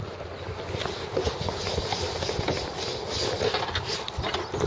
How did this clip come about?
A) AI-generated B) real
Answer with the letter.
B